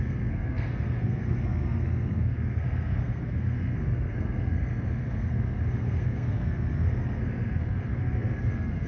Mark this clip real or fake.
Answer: fake